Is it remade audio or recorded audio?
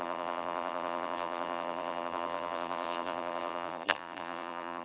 remade